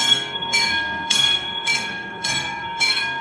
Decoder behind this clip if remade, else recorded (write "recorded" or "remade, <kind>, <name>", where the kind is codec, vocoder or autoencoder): remade, codec, SNAC